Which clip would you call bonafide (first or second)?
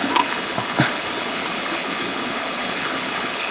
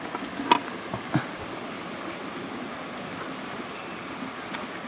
second